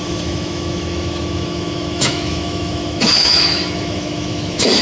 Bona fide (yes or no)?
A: no